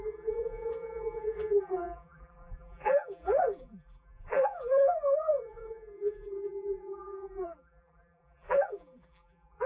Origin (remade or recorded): remade